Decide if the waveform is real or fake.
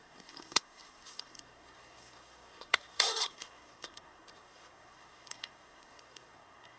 fake